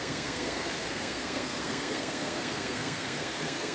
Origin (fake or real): fake